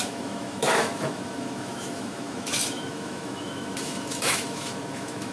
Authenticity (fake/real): fake